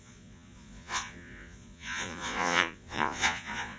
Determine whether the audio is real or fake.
fake